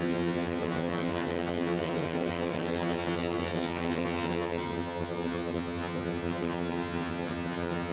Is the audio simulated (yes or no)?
yes